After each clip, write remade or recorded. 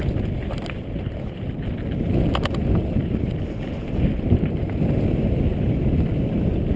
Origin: recorded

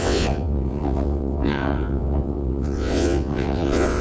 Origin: remade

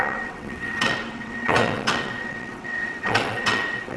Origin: remade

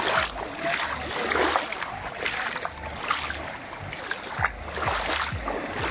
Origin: recorded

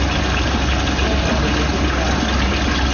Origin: recorded